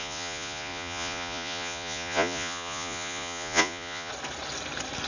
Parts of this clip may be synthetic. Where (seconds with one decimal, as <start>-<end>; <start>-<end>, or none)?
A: 0.0-4.1